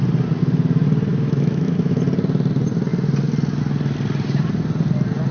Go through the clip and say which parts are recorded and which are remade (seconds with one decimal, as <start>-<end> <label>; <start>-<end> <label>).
0.0-1.1 recorded; 1.1-2.0 remade; 2.0-5.3 recorded